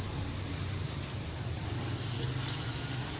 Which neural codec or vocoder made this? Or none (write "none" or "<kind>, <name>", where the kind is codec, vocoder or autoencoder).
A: none